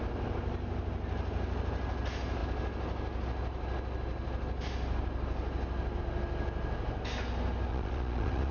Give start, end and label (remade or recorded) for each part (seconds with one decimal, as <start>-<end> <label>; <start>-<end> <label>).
0.0-7.7 recorded; 7.7-8.5 remade